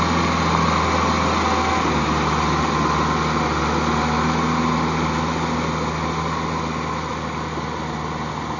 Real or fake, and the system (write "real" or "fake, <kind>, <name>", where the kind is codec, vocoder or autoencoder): real